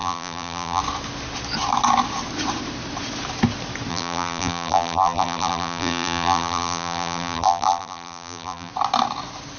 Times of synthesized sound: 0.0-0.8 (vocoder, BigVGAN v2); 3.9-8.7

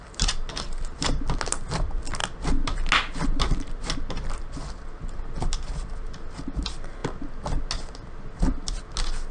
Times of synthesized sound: none

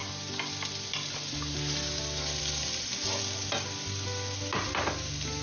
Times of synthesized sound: none

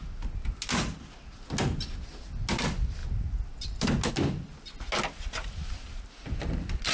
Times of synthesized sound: none

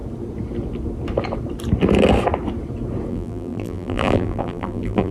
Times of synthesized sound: 3.1-5.1 (vocoder, BigVGAN v2)

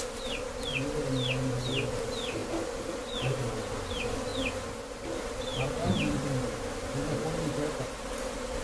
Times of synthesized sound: none

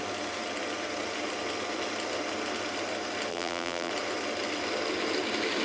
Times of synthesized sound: 3.3-3.9 (vocoder, BigVGAN v2)